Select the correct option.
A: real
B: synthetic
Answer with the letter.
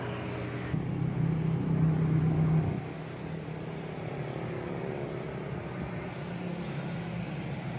A